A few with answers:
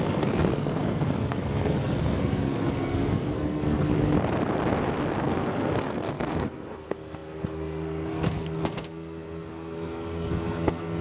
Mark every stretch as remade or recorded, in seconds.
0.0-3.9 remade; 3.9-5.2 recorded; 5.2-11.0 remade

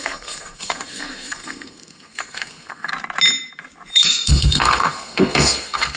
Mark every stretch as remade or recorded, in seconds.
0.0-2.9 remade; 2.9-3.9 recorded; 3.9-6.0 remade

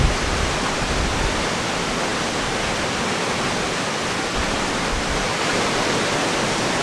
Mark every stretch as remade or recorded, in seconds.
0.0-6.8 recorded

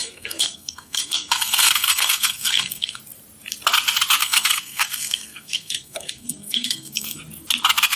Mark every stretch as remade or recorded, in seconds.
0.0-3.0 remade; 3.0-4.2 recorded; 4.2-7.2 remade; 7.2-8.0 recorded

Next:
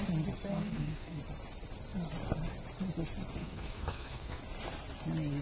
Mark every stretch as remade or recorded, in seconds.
0.0-0.5 recorded; 0.5-1.2 remade; 1.2-3.4 recorded; 3.4-4.4 remade; 4.4-5.4 recorded

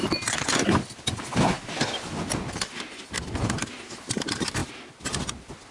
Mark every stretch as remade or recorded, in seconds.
0.0-5.7 recorded

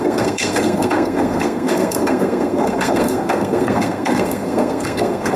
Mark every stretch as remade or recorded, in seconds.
0.0-5.4 remade